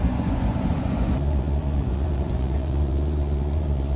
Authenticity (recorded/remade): remade